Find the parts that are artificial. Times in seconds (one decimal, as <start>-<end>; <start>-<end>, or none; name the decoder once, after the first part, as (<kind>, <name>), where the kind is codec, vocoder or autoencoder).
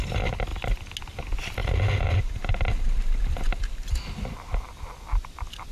none